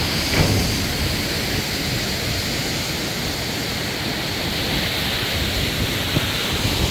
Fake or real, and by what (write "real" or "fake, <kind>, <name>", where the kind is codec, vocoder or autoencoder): real